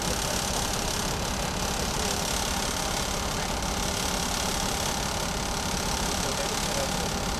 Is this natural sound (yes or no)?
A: yes